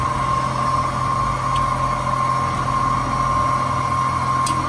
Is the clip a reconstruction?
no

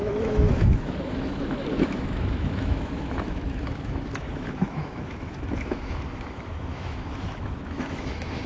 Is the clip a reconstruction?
yes